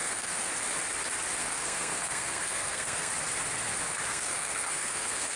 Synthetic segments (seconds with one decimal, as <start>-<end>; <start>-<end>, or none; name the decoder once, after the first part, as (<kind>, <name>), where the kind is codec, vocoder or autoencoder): 0.0-0.5 (codec, SNAC); 1.4-3.1; 4.1-5.4